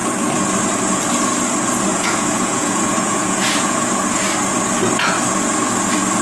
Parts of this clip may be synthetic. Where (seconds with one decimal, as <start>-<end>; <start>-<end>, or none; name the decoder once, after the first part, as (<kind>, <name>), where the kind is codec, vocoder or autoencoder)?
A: 1.9-4.0 (vocoder, Vocos)